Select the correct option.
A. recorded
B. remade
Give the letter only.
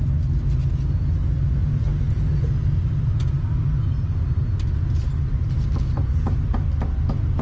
A